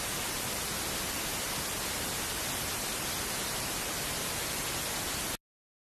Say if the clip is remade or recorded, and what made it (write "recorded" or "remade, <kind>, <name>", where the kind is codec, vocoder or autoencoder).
recorded